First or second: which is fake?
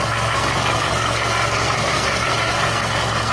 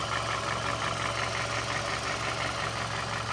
first